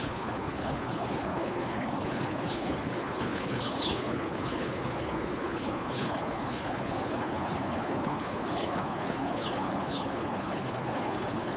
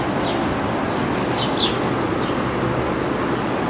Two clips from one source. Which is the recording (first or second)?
second